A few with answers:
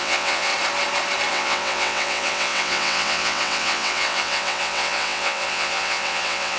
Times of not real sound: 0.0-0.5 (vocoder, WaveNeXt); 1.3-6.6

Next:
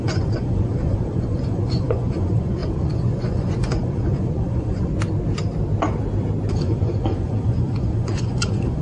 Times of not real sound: 0.0-4.9 (vocoder, Vocos); 6.5-8.8

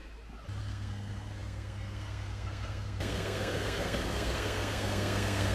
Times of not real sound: 0.6-5.5 (codec, SNAC)

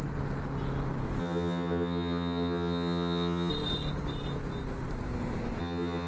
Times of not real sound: 1.2-3.5 (vocoder, HiFi-GAN); 5.6-6.1